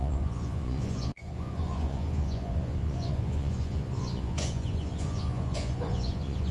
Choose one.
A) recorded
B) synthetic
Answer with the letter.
B